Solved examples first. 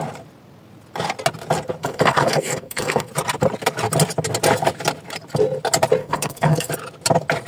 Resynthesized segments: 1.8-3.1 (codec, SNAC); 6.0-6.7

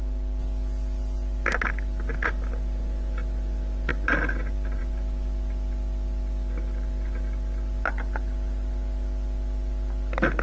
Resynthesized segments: none

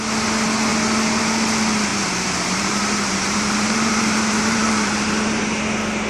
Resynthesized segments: 1.9-5.6 (vocoder, BigVGAN v2)

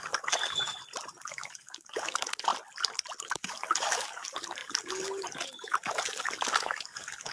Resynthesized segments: 0.0-0.8 (codec, DAC); 1.3-2.5; 3.2-7.3

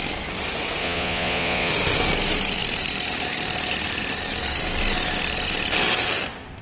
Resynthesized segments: 0.8-1.7 (vocoder, Vocos)

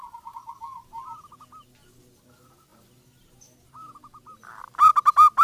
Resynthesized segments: none

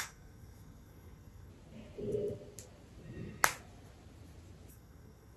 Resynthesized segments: 0.0-1.5 (codec, SNAC); 4.7-5.4